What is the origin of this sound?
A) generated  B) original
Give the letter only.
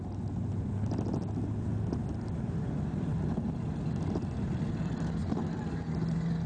B